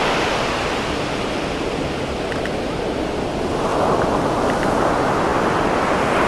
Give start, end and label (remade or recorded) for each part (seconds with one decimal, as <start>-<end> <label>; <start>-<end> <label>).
0.0-6.3 recorded